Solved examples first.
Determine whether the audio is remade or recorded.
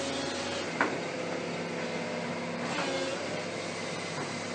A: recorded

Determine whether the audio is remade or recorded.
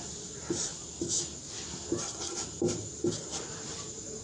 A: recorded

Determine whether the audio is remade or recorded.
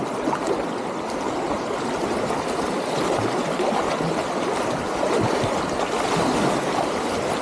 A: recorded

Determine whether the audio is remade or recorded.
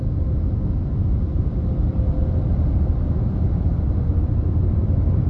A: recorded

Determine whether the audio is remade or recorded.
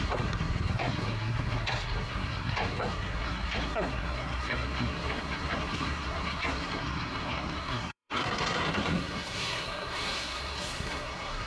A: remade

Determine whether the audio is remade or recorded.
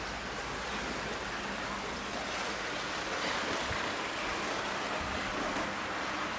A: recorded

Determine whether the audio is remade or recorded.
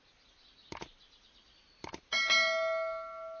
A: recorded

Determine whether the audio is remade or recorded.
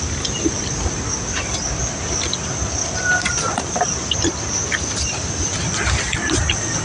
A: recorded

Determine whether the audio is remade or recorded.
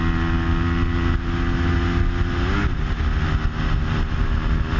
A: recorded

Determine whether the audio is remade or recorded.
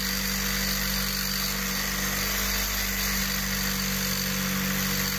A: recorded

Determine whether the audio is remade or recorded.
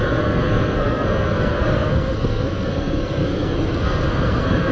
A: remade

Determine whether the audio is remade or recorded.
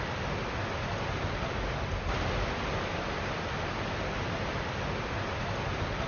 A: recorded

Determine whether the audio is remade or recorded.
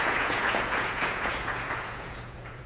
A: remade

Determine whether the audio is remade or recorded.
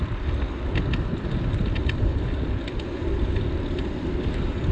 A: recorded